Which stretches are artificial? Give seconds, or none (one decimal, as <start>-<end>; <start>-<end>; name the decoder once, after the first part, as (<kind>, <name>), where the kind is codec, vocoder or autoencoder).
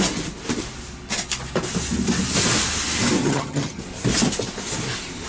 3.2-3.8 (vocoder, HiFi-GAN)